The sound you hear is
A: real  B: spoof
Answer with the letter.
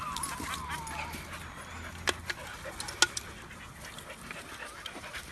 A